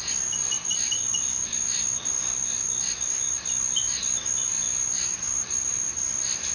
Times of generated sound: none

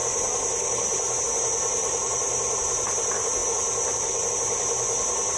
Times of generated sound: 0.0-1.2 (vocoder, BigVGAN v2); 1.8-2.8

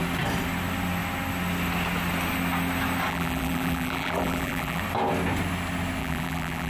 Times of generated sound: 3.1-4.8 (vocoder, BigVGAN v2); 6.0-6.7

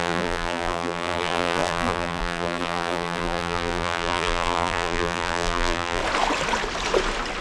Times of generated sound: 0.0-6.0 (vocoder, BigVGAN v2)

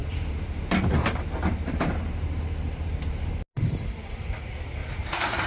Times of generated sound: 0.0-3.3 (vocoder, BigVGAN v2); 4.8-5.5

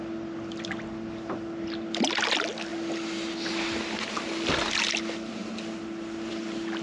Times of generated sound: none

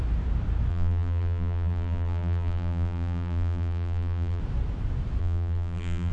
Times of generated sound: 0.7-4.4 (vocoder, BigVGAN v2); 5.2-6.1